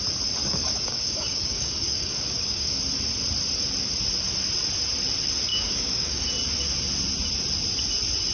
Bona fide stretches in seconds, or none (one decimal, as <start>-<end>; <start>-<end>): 0.0-0.4; 2.8-5.5; 6.3-8.3